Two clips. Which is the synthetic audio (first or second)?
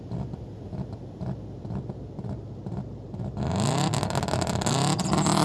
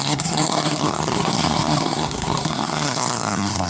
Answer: second